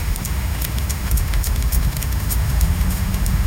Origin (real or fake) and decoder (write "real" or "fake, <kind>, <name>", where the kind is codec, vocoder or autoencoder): fake, autoencoder, DAC-VAE